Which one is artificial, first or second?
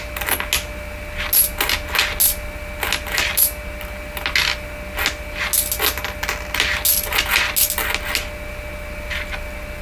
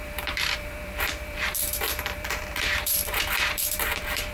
second